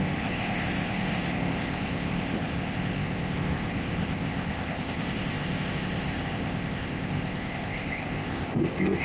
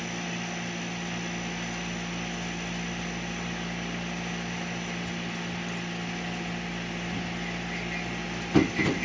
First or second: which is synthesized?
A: first